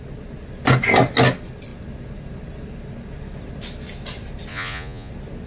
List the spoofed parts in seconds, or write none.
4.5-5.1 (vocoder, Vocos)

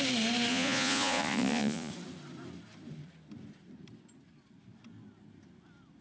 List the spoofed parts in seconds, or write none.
0.5-1.9 (vocoder, Vocos)

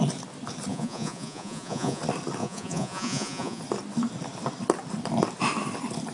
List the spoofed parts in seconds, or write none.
0.7-2.0 (vocoder, Vocos); 2.4-3.6

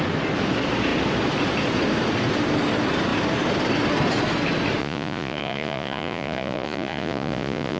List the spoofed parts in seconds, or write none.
4.8-7.8 (vocoder, Vocos)

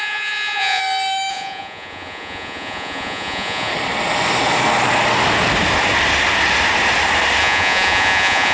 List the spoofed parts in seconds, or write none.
0.0-0.8 (vocoder, Vocos); 1.3-3.7; 7.4-8.5